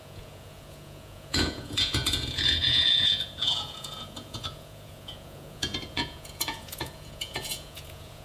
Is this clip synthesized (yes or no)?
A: yes